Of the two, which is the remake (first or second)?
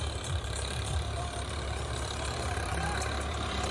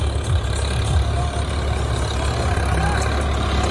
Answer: first